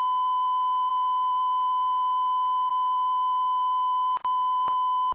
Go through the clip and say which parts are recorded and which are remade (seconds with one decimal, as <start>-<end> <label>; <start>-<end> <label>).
0.0-5.1 recorded